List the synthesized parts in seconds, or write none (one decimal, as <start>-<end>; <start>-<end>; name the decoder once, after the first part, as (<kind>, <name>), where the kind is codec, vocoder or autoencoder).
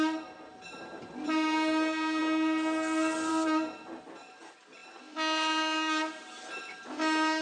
none